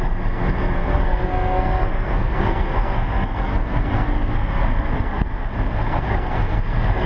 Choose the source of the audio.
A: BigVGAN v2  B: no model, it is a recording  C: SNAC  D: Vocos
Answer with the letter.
C